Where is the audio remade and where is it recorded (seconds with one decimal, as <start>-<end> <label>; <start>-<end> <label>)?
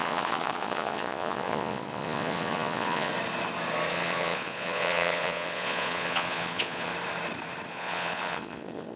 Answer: 0.0-3.1 remade; 3.1-3.9 recorded; 3.9-6.9 remade; 6.9-7.7 recorded; 7.7-9.0 remade